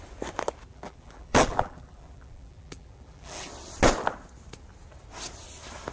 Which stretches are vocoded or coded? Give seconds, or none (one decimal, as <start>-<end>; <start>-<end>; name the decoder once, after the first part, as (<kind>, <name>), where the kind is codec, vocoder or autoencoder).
0.7-3.5 (vocoder, BigVGAN v2)